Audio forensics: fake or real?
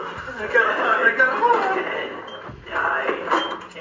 real